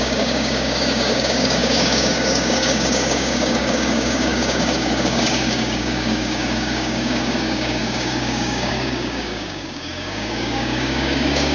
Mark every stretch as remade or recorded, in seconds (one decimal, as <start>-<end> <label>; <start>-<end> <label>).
0.0-11.5 remade